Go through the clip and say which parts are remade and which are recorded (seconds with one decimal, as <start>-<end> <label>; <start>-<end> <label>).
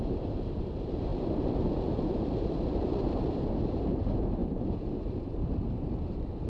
0.0-1.1 remade; 1.1-3.6 recorded; 3.6-6.5 remade